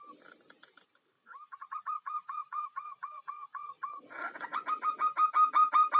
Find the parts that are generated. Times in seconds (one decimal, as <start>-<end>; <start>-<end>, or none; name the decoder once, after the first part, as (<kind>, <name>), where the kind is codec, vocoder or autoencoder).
1.6-4.1 (vocoder, Vocos)